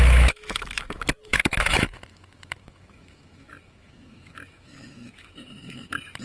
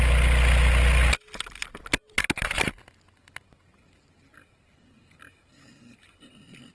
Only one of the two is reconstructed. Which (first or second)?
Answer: first